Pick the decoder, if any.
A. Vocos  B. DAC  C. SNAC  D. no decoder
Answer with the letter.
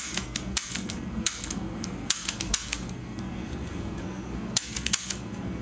C